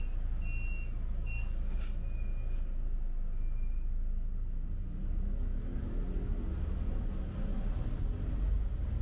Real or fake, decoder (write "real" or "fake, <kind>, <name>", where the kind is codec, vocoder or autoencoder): real